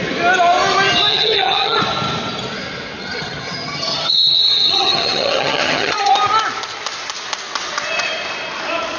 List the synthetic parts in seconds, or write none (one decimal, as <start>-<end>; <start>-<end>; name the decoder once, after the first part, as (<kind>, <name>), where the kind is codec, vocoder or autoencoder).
1.1-1.8 (vocoder, HiFi-GAN); 3.0-6.1

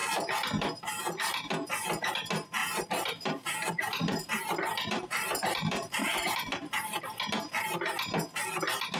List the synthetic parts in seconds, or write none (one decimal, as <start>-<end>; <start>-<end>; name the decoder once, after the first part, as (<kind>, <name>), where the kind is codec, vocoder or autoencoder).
2.6-7.0 (vocoder, BigVGAN v2)

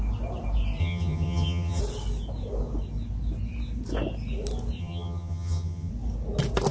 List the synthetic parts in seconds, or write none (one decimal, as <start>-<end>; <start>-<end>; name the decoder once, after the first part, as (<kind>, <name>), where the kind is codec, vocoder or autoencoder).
0.8-1.8 (vocoder, HiFi-GAN); 4.8-5.9

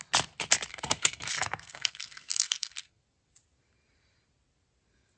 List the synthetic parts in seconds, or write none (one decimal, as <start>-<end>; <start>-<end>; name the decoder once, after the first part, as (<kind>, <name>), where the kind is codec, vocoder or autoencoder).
0.7-3.0 (codec, SNAC)

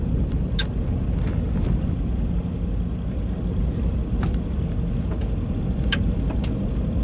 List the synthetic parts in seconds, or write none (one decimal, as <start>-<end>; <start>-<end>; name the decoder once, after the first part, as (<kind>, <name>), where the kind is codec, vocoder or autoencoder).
none

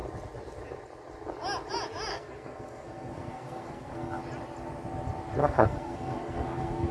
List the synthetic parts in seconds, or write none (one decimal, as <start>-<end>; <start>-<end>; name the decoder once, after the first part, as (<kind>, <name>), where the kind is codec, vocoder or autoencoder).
2.1-4.2 (codec, SNAC); 5.4-6.9

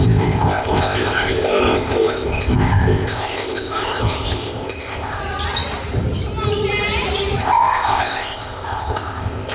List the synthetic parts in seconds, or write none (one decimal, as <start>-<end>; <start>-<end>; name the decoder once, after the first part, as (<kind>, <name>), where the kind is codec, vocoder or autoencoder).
0.0-5.2 (codec, ZipCodec); 7.4-9.5